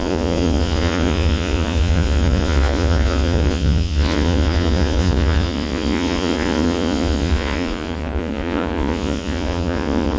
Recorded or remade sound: remade